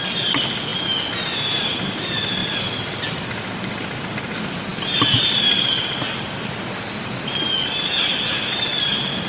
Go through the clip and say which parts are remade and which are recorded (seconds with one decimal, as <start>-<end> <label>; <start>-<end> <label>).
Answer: 0.0-0.7 remade; 0.7-1.9 recorded; 1.9-2.4 remade; 2.4-3.1 recorded; 3.1-6.4 remade; 6.4-8.8 recorded; 8.8-9.3 remade

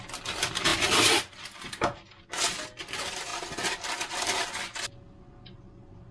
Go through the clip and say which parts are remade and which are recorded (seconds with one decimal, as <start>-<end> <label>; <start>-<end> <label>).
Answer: 0.0-6.1 recorded

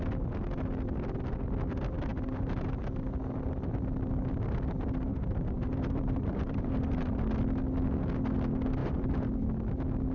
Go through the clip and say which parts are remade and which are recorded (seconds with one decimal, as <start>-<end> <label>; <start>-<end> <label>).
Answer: 0.0-2.1 recorded; 2.1-3.2 remade; 3.2-5.1 recorded; 5.1-7.2 remade; 7.2-8.8 recorded; 8.8-9.4 remade; 9.4-10.1 recorded

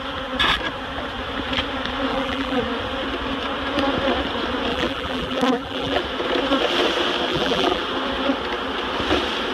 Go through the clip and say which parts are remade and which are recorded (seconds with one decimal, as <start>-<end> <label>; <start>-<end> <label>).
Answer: 0.0-2.1 recorded; 2.1-2.6 remade; 2.6-4.7 recorded; 4.7-6.0 remade; 6.0-7.3 recorded; 7.3-7.8 remade; 7.8-9.5 recorded

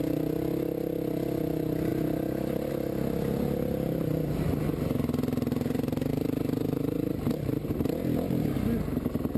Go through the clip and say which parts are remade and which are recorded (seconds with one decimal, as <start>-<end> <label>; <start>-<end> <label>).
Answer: 0.0-6.1 recorded; 6.1-7.7 remade; 7.7-9.4 recorded

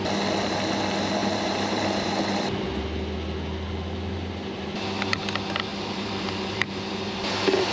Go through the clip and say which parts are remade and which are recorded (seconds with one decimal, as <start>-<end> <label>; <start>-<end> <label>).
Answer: 0.0-1.2 recorded; 1.2-2.1 remade; 2.1-5.7 recorded; 5.7-7.7 remade

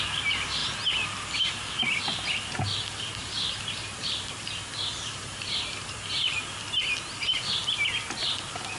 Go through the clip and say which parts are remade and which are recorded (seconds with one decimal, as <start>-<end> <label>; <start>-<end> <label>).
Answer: 0.0-3.2 recorded; 3.2-6.4 remade; 6.4-8.8 recorded

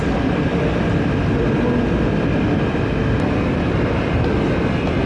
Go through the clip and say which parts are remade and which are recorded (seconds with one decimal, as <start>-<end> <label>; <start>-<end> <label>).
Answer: 0.0-5.1 recorded